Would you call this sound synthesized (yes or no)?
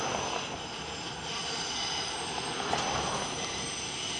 no